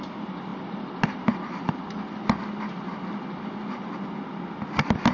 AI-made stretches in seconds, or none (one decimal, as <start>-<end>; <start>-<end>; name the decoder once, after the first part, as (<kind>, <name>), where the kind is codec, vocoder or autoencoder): none